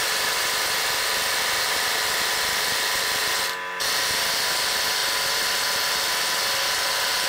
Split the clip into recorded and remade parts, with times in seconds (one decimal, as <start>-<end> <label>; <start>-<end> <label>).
0.0-7.3 recorded